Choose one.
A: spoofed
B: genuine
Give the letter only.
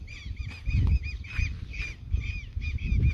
B